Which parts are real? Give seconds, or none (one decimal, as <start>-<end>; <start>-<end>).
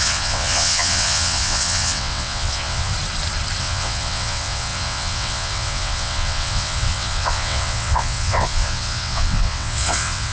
2.9-3.6